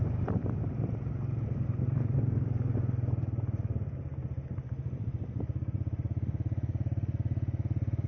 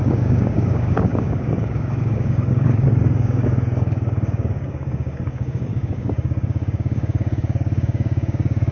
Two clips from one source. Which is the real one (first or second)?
first